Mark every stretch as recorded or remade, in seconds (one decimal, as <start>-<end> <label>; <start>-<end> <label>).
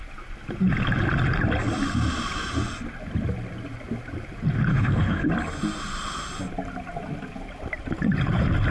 0.0-4.7 recorded; 4.7-5.3 remade; 5.3-8.7 recorded